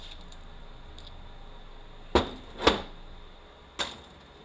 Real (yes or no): yes